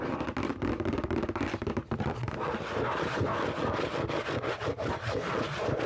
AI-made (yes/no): no